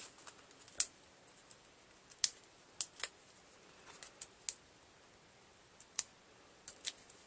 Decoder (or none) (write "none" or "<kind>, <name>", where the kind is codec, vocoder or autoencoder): none